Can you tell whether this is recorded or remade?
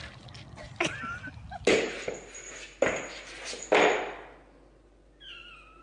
recorded